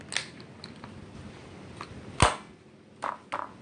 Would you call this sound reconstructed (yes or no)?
no